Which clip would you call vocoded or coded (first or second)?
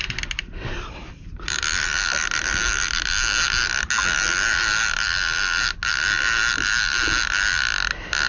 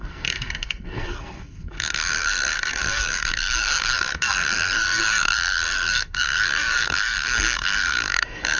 second